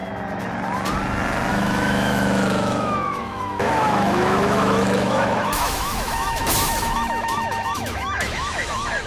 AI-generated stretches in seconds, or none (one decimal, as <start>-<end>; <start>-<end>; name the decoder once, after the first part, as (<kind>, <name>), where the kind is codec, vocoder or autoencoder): 1.5-9.1 (autoencoder, DAC-VAE)